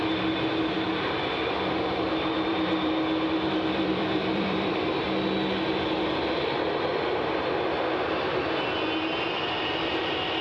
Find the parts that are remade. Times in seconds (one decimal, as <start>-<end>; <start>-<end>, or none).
2.5-4.9